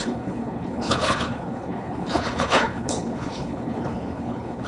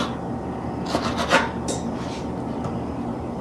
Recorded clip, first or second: second